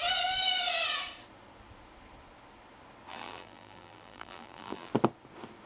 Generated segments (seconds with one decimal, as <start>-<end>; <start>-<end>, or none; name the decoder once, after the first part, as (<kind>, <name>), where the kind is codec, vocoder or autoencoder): 3.1-4.9 (vocoder, BigVGAN v2)